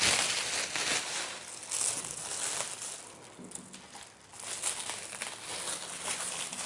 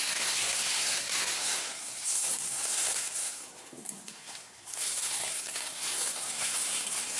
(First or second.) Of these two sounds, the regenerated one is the second